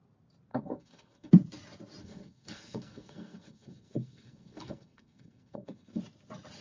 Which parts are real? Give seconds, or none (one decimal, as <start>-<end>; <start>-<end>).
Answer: 0.0-0.5; 1.3-2.0; 6.0-6.6